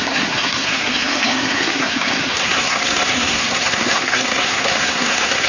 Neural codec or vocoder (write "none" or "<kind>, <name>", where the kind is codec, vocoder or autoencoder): codec, SNAC